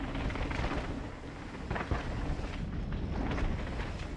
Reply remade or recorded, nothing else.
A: recorded